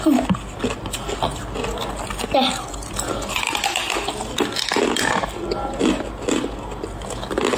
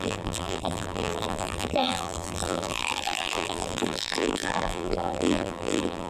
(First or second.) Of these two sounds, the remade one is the second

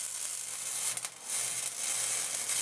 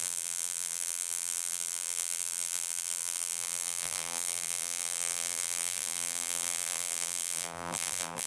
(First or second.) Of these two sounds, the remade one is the second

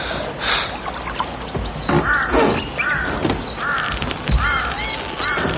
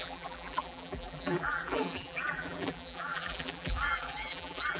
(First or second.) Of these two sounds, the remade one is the second